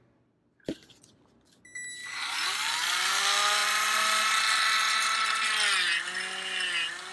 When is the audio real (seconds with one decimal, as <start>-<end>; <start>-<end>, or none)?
0.0-2.0; 3.1-3.6; 5.4-7.1